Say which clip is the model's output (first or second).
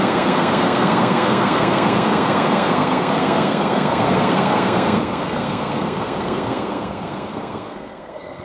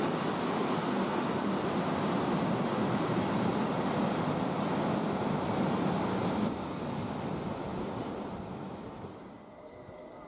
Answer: first